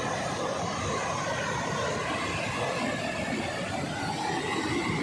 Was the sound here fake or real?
real